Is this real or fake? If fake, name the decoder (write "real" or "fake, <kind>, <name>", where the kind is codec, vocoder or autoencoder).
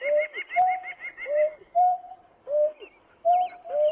real